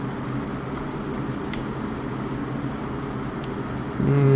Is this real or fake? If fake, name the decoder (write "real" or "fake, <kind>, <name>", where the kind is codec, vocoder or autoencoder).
real